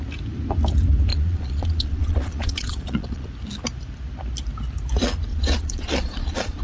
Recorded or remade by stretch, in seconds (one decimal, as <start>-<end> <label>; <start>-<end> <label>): 0.0-1.1 recorded; 1.1-3.3 remade; 3.3-5.3 recorded; 5.3-6.6 remade